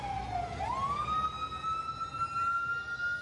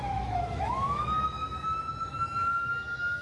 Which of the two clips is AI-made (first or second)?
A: second